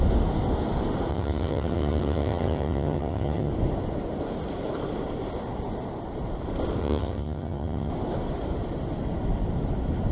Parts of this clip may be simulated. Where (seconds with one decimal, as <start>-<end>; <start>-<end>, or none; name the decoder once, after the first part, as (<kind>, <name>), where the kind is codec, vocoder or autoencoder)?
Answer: 1.1-3.5 (vocoder, HiFi-GAN); 6.8-7.9